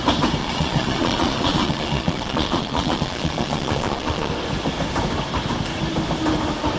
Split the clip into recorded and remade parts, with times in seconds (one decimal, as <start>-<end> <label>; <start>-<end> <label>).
0.0-0.4 recorded; 0.4-4.3 remade; 4.3-6.8 recorded